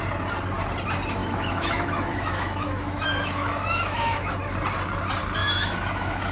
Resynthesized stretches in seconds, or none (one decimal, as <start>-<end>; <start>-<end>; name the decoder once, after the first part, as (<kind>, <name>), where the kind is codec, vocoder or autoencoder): 1.2-4.4 (autoencoder, DAC-VAE); 5.4-6.3

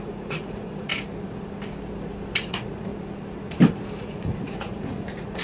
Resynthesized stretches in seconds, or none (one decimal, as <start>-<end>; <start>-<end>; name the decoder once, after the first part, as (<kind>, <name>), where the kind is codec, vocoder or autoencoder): 0.0-0.9 (vocoder, Vocos); 2.4-2.9; 4.0-5.4